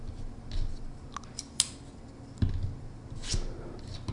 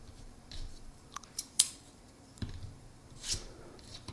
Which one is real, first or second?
first